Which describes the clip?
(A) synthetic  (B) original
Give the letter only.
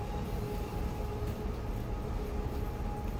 B